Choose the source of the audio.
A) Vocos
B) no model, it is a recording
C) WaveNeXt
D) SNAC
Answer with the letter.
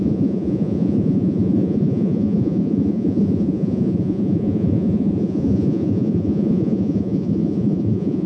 A